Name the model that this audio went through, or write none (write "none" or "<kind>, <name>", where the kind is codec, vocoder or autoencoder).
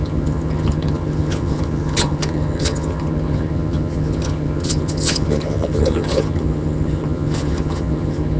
vocoder, HiFi-GAN